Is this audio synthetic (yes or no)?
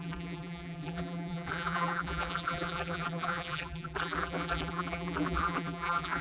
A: yes